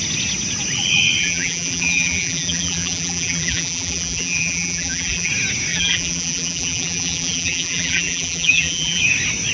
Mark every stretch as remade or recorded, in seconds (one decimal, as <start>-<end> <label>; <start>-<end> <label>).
0.0-1.2 recorded; 1.2-5.3 remade; 5.3-5.7 recorded; 5.7-9.0 remade; 9.0-9.5 recorded